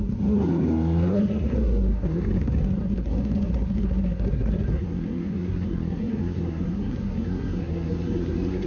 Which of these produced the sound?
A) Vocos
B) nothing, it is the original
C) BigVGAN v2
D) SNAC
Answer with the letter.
D